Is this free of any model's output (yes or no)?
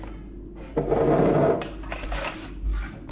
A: yes